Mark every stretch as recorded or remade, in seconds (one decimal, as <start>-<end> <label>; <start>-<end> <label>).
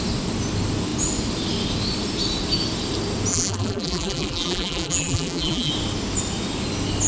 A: 0.0-3.3 recorded; 3.3-5.7 remade; 5.7-7.1 recorded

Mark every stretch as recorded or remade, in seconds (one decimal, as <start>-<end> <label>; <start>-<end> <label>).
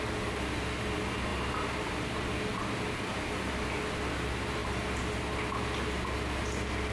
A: 0.0-1.3 recorded; 1.3-1.9 remade; 1.9-6.9 recorded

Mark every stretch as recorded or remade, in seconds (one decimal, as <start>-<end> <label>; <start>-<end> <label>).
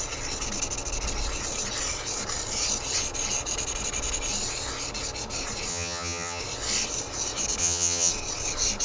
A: 0.0-5.7 recorded; 5.7-6.4 remade; 6.4-7.6 recorded; 7.6-8.1 remade; 8.1-8.8 recorded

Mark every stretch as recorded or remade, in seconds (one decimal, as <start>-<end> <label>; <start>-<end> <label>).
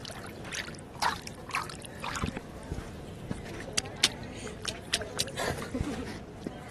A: 0.0-2.9 remade; 2.9-4.2 recorded; 4.2-6.2 remade; 6.2-6.7 recorded